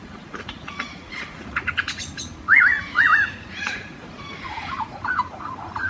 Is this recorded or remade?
remade